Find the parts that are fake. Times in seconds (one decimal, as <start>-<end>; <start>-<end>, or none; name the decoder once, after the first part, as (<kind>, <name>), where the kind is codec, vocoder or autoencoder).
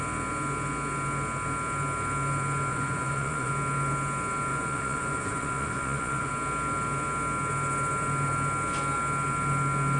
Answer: 2.7-3.5 (vocoder, Vocos); 4.5-6.3